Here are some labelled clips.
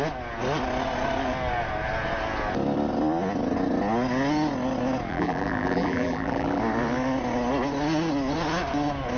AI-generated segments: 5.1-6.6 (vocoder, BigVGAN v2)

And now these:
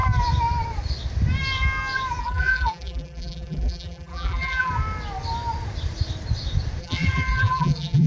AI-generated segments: 2.2-4.7 (vocoder, BigVGAN v2); 6.8-8.1

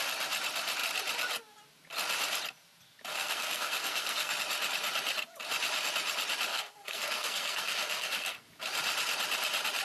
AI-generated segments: 3.1-4.3 (codec, SNAC); 6.5-8.5